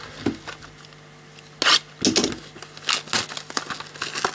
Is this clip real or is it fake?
real